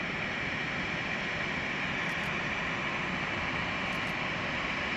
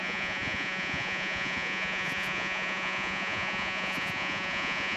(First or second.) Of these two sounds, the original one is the first